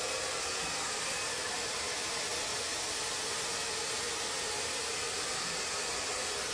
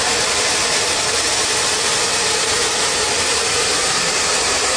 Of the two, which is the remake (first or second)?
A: second